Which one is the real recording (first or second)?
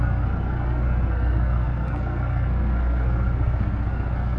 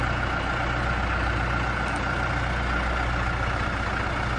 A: second